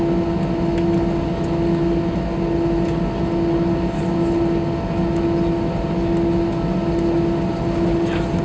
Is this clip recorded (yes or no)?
yes